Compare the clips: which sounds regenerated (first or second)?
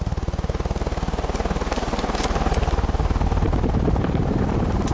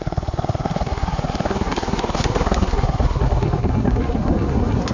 second